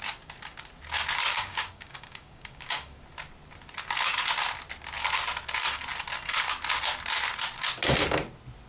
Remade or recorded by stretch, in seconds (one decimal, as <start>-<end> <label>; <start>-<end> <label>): 0.0-1.3 recorded; 1.3-3.0 remade; 3.0-8.7 recorded